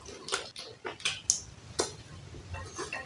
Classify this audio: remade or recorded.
recorded